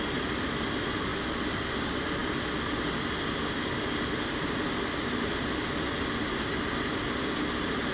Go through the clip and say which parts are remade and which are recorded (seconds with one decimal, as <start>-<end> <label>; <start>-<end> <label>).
0.0-7.9 recorded